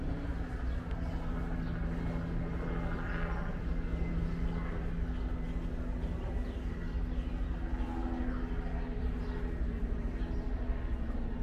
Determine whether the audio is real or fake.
real